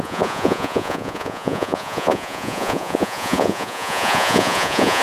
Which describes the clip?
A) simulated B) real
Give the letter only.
A